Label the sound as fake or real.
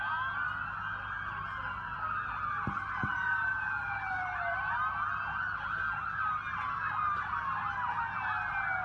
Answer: real